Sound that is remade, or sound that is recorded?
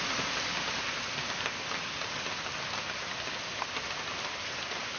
recorded